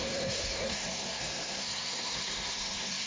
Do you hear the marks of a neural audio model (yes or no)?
yes